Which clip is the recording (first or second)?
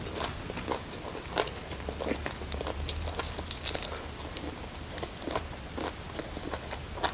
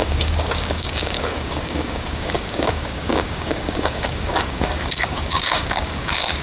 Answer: first